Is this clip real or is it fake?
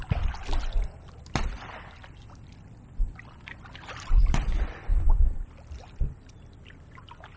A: fake